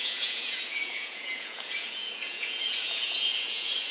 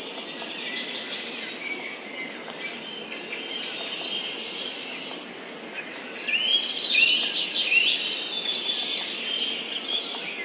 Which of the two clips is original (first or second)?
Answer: second